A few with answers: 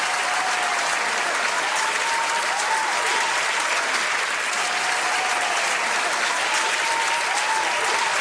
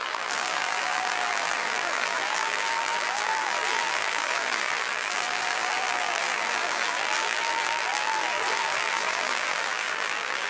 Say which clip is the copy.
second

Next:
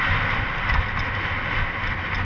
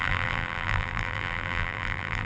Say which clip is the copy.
second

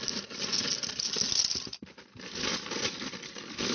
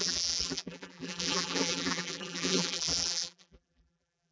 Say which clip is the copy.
second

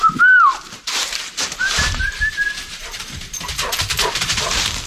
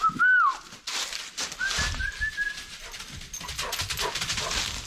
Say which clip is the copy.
first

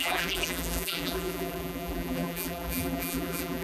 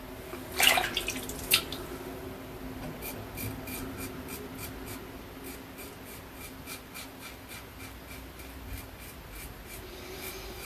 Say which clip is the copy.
first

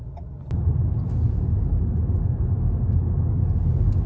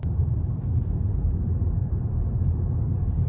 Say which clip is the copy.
second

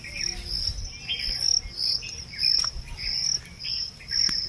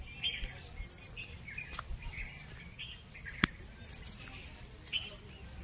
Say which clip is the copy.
second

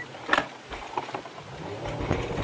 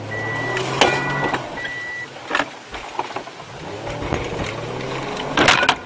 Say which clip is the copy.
first